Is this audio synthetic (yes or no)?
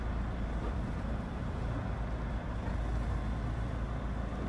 no